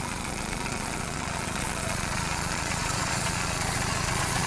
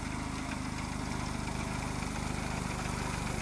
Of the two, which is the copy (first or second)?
first